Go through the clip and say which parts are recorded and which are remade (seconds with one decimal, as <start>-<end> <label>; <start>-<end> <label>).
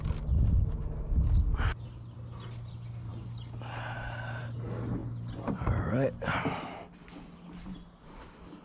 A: 0.0-8.6 recorded